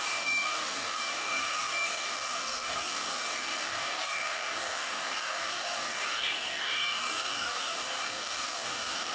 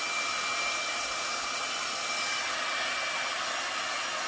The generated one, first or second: first